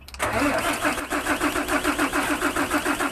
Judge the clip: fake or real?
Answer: real